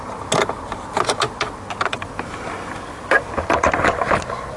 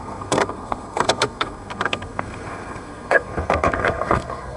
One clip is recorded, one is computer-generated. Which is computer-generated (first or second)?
second